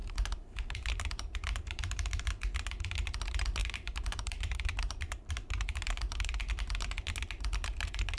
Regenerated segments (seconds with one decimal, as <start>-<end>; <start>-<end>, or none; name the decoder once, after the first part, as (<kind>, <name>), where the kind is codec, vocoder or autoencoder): 0.0-2.3 (vocoder, BigVGAN v2); 3.6-6.3